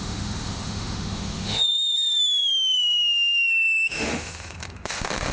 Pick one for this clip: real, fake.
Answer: fake